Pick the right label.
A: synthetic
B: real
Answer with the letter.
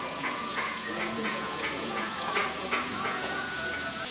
A